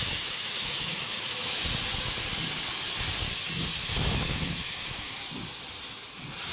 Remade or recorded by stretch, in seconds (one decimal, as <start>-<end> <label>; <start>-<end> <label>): 0.0-1.6 remade; 1.6-3.8 recorded; 3.8-5.2 remade; 5.2-6.5 recorded